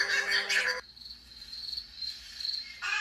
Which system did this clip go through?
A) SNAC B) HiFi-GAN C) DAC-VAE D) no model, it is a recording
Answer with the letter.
D